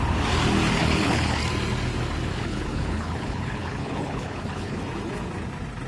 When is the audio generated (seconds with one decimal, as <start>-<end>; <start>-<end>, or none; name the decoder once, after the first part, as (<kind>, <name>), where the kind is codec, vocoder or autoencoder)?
0.8-1.4 (codec, HILCodec); 2.3-4.8